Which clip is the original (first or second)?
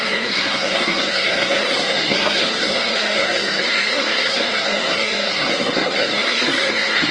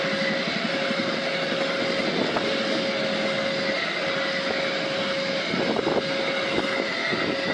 second